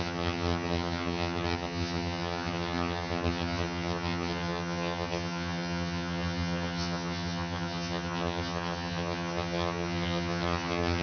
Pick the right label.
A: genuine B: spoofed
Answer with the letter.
B